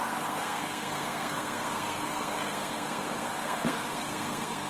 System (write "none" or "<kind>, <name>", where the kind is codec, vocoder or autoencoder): codec, SNAC